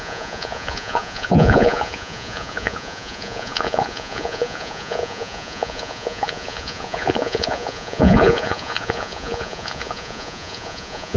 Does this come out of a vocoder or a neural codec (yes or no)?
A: yes